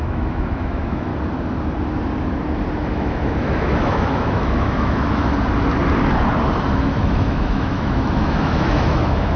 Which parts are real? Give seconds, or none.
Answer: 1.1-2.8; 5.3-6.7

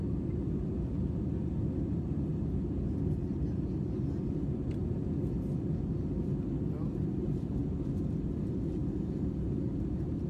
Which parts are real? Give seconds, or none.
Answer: 0.0-10.3

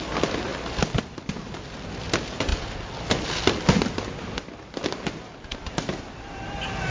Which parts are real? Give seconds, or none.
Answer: 0.0-6.9

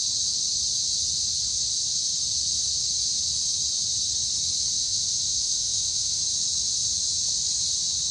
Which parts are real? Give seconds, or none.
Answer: 0.0-4.8; 6.2-8.1

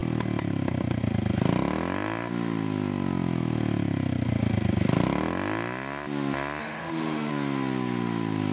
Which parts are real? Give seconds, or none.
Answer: 0.0-6.6; 7.3-8.5

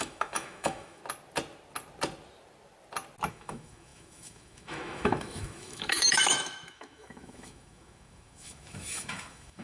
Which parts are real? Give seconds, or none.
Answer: 1.0-3.3

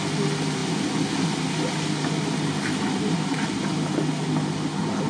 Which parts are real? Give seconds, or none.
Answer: 0.0-5.1